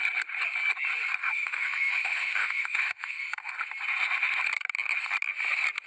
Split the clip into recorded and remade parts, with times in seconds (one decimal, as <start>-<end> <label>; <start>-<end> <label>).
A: 0.0-1.2 recorded; 1.2-3.5 remade; 3.5-5.9 recorded